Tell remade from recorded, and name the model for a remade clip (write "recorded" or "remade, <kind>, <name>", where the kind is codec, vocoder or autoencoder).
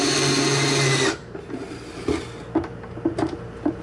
recorded